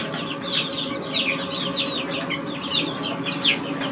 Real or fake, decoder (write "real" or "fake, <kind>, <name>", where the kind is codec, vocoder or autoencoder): real